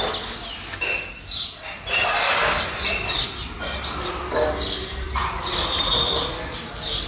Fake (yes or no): no